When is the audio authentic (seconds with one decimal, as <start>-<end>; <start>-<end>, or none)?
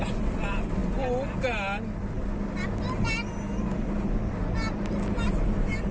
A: 0.0-5.9